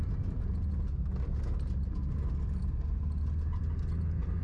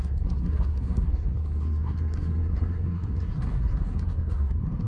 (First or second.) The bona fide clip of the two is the first